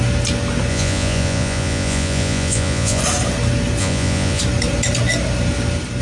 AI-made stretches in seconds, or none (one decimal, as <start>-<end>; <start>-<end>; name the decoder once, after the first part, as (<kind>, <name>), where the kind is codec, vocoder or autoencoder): 0.7-3.0 (vocoder, Vocos); 3.8-4.4